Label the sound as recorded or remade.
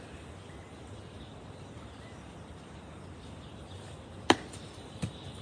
recorded